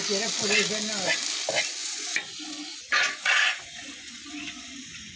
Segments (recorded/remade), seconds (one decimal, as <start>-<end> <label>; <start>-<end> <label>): 0.0-1.8 recorded; 1.8-5.2 remade